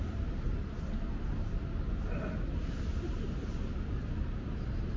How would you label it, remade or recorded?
recorded